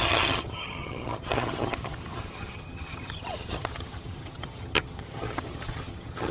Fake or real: fake